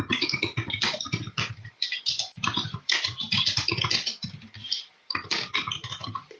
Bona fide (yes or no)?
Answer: no